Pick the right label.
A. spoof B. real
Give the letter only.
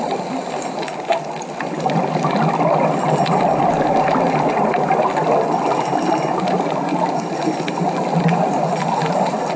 B